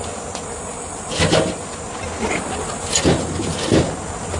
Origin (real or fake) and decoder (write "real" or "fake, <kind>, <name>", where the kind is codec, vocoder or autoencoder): real